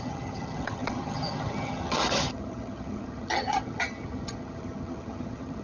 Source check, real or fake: fake